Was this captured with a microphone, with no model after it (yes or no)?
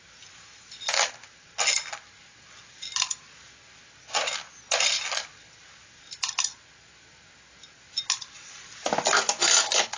yes